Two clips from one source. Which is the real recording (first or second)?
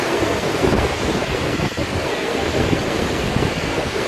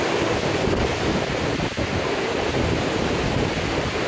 second